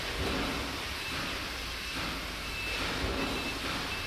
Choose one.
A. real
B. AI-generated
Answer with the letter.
A